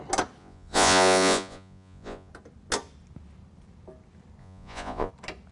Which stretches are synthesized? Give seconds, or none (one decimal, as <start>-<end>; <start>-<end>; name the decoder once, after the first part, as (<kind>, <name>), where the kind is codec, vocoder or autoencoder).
0.4-2.3 (vocoder, Vocos); 4.4-5.1

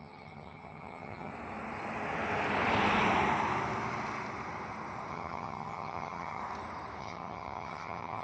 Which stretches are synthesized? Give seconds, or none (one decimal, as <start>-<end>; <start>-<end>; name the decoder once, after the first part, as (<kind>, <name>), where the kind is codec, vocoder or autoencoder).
0.0-1.3 (vocoder, HiFi-GAN); 5.1-6.4; 7.0-8.2